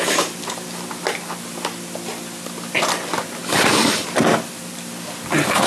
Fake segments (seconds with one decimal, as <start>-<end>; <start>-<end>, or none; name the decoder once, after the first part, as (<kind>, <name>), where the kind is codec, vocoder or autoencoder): none